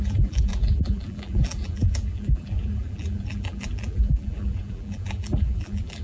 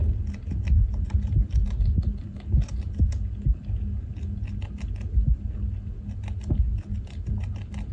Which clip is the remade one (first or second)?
first